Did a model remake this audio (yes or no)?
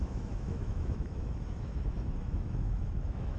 yes